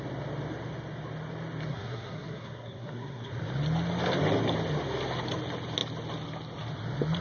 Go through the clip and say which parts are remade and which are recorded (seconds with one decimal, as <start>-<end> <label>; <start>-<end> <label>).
0.0-1.7 recorded; 1.7-3.3 remade; 3.3-7.2 recorded